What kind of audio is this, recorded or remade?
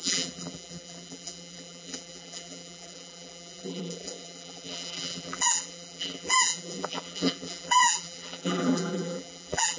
remade